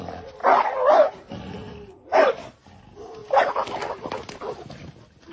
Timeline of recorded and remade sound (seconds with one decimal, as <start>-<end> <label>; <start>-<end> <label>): 0.0-5.3 recorded